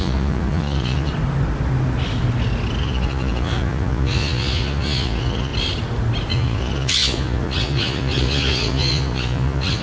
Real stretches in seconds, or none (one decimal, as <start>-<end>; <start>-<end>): 1.1-2.8; 5.5-6.3